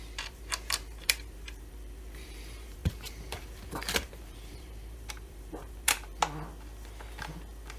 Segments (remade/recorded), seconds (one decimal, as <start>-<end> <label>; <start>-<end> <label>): 0.0-6.2 remade; 6.2-7.8 recorded